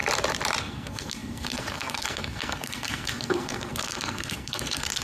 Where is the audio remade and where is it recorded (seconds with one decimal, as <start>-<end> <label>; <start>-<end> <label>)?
0.0-0.6 recorded; 0.6-5.0 remade